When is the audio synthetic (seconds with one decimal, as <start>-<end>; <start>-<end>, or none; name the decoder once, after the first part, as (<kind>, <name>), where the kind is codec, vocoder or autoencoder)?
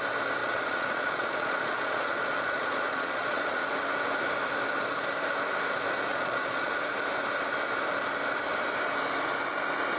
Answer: 0.4-3.7 (vocoder, Vocos); 6.1-6.7